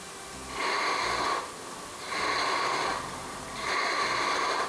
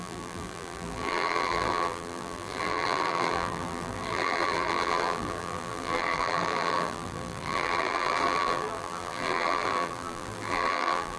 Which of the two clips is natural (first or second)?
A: first